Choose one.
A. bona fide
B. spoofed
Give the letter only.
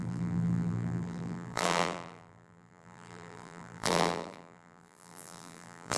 B